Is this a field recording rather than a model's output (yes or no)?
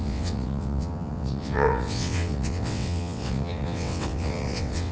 no